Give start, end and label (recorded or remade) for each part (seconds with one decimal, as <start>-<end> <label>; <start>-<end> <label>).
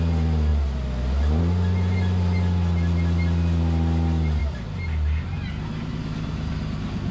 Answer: 0.0-7.1 recorded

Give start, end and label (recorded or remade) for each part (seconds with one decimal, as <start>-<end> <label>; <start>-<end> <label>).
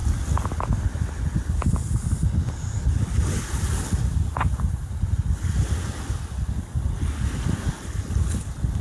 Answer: 0.0-8.8 recorded